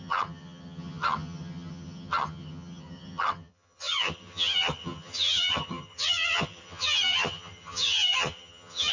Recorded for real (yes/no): no